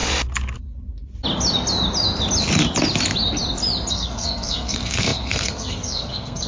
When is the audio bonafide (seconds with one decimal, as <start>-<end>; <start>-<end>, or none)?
0.0-3.9

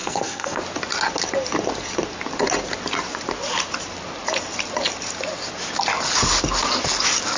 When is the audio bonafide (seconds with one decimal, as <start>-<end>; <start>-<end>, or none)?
0.6-7.4

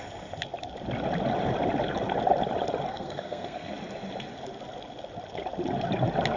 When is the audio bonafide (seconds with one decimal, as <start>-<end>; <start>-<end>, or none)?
0.0-2.9; 3.7-6.4

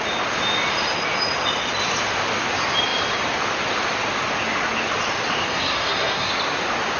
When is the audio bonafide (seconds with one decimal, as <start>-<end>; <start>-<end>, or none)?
0.0-5.5; 6.3-7.0

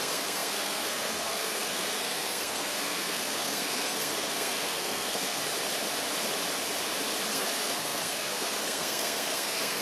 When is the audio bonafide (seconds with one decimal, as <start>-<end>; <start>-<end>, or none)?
5.4-7.3

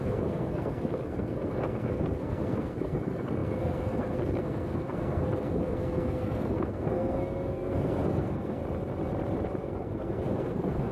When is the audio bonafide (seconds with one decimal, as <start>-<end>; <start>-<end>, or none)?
8.6-9.6